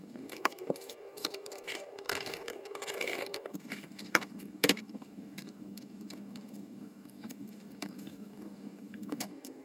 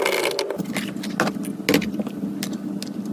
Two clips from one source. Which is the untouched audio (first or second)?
second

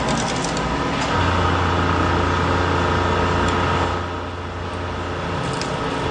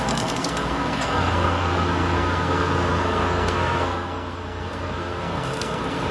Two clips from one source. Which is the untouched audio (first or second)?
first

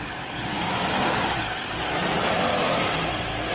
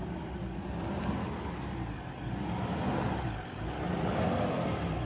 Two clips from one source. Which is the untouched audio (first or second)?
second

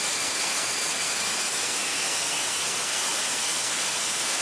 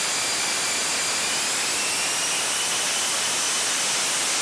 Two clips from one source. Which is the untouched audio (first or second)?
second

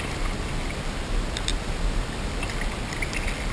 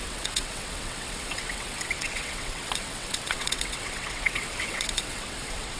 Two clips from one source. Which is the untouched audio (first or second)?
first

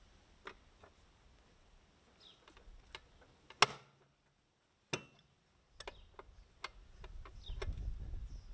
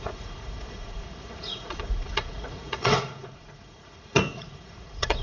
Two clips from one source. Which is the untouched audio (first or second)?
first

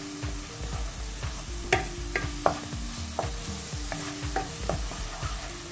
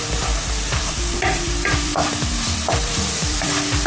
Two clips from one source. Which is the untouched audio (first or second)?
first